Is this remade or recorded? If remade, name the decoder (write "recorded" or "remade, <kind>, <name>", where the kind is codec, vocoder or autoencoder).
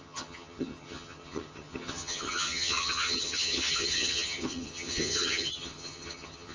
remade, vocoder, HiFi-GAN